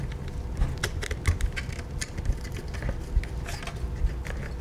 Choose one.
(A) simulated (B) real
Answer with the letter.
B